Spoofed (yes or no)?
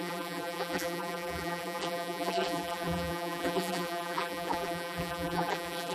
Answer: yes